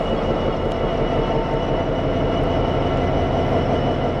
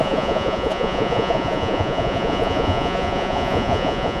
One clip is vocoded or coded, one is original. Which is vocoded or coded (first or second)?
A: second